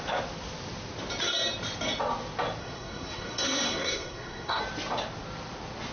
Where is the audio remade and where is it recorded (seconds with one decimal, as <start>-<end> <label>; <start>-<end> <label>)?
0.0-2.6 recorded; 2.6-4.6 remade; 4.6-5.9 recorded